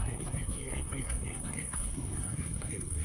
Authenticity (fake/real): fake